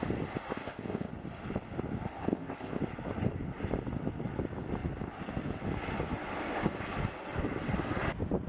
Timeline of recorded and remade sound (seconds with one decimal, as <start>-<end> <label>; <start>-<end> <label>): 0.0-0.5 recorded; 0.5-1.1 remade; 1.1-2.2 recorded; 2.2-2.8 remade; 2.8-8.5 recorded